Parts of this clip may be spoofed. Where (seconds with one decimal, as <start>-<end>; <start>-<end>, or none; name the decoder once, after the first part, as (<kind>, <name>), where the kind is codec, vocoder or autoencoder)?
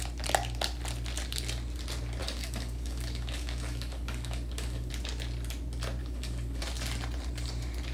2.2-4.9 (codec, DAC); 6.0-6.6